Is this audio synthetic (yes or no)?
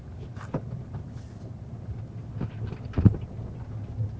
no